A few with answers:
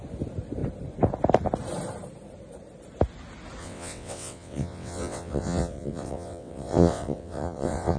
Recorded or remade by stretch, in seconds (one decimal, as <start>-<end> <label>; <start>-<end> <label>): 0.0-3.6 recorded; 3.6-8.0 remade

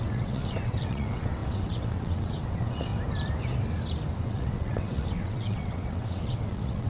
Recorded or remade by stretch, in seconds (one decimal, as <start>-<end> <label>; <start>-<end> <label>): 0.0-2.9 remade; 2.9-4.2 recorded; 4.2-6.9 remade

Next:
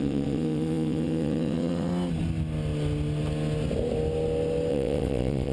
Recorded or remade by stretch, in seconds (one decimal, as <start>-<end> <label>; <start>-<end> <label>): 0.0-1.9 remade; 1.9-4.7 recorded; 4.7-5.5 remade

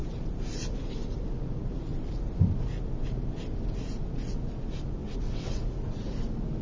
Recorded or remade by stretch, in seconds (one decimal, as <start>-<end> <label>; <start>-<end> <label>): 0.0-5.0 recorded; 5.0-5.6 remade; 5.6-6.6 recorded

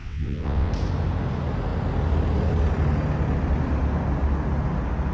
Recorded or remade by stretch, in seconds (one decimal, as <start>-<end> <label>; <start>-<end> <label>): 0.0-0.7 remade; 0.7-5.1 recorded

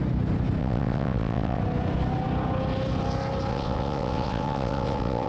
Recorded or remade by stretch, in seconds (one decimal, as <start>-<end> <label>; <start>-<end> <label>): 0.0-0.6 recorded; 0.6-1.6 remade; 1.6-3.5 recorded; 3.5-5.3 remade

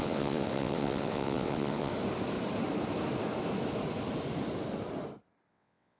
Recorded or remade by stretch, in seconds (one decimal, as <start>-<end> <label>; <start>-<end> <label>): 0.0-1.9 remade; 1.9-5.5 recorded; 5.5-6.0 remade

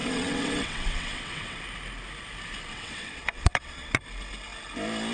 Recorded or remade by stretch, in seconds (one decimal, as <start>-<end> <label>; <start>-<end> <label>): 0.0-1.6 remade; 1.6-2.7 recorded; 2.7-4.0 remade; 4.0-5.1 recorded